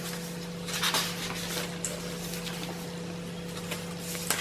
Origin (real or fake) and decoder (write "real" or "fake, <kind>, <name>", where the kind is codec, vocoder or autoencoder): real